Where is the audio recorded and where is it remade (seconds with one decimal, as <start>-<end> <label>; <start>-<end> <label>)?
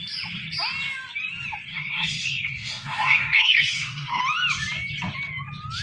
0.0-1.7 recorded; 1.7-4.2 remade; 4.2-5.8 recorded